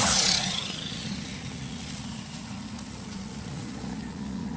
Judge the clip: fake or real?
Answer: fake